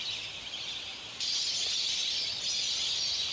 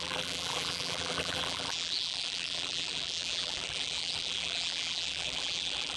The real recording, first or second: first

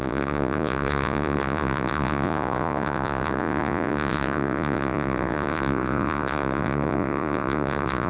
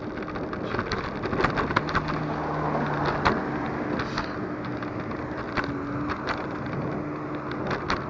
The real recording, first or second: second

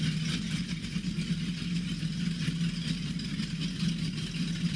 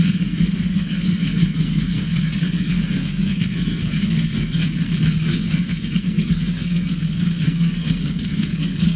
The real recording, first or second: first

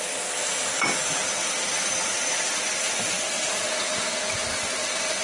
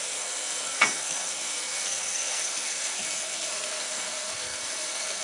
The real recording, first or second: first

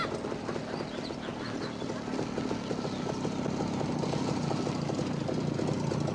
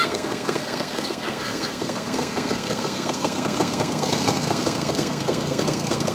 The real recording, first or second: first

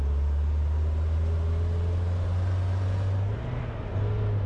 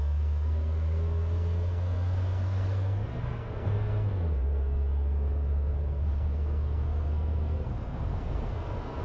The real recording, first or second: first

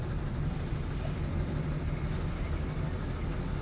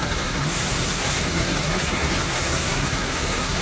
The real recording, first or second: first